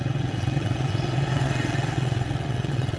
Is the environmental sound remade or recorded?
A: remade